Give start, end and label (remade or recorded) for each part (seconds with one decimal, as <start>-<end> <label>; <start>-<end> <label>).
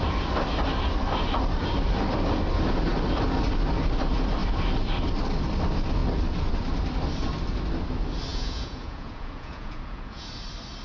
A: 0.0-8.3 recorded; 8.3-10.3 remade; 10.3-10.8 recorded